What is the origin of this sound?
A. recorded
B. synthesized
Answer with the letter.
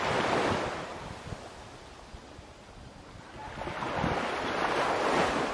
A